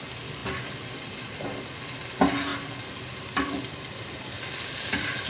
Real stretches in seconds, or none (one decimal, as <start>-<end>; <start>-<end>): 0.0-5.3